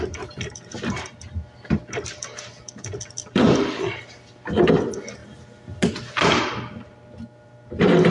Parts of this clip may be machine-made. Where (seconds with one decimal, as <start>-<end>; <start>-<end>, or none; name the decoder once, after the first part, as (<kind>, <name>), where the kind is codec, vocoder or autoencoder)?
0.0-5.2 (vocoder, BigVGAN v2)